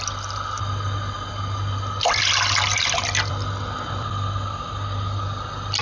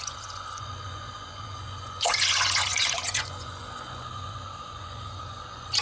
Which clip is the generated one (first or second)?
second